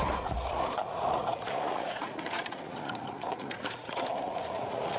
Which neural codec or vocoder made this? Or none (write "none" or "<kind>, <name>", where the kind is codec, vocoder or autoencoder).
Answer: vocoder, Vocos